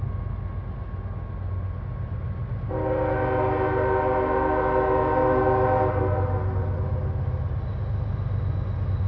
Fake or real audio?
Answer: real